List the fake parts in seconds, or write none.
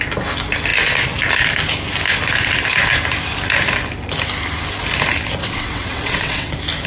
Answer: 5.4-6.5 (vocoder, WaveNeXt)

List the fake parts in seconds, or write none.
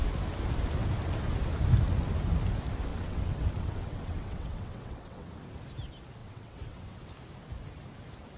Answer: 2.9-5.3 (vocoder, WaveNeXt); 6.2-7.1